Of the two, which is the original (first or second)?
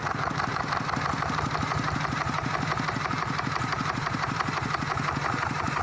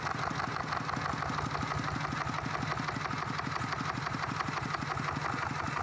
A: second